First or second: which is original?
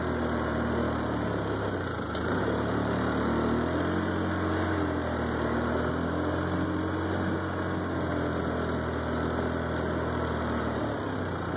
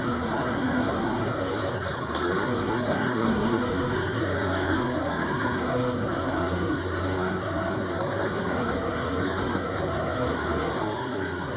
first